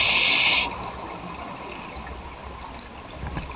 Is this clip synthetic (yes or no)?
no